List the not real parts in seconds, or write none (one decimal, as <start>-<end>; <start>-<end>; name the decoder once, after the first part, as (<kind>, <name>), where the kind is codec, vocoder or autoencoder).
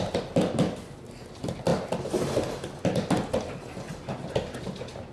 none